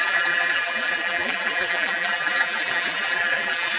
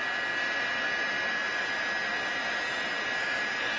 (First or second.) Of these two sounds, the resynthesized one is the first